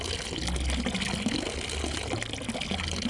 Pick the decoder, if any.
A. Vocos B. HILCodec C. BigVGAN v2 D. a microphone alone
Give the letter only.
D